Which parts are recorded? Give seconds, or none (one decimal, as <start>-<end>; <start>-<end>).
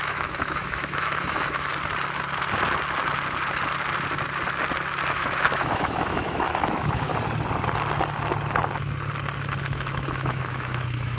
1.7-5.1; 7.1-9.6